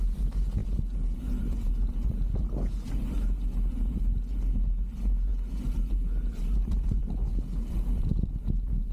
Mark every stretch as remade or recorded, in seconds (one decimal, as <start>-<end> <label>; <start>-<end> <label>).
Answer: 0.0-8.9 recorded